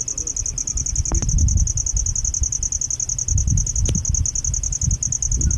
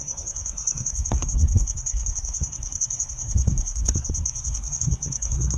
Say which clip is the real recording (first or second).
first